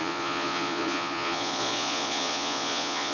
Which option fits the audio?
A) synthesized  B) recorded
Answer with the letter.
A